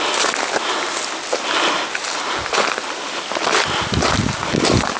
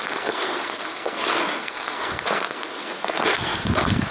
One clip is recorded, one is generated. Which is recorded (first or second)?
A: first